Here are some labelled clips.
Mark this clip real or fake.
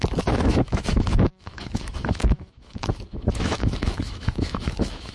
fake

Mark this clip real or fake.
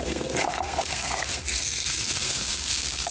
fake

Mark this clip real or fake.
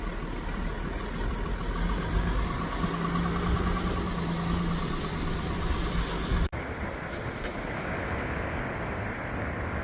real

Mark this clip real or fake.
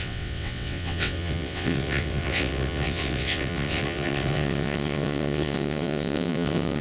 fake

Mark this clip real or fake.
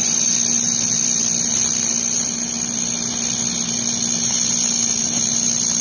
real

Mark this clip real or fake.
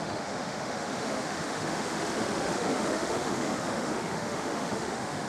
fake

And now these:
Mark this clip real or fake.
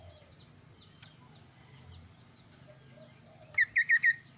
real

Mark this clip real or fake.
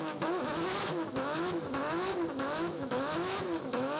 fake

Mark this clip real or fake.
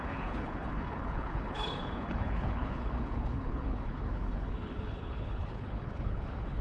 fake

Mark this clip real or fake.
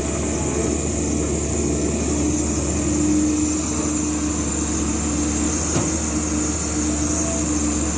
real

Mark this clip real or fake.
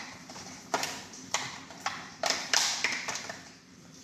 fake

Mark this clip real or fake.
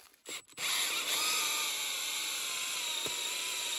real